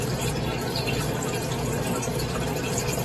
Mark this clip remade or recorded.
remade